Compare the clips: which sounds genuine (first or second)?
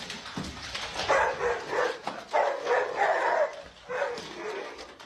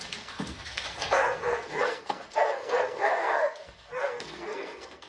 first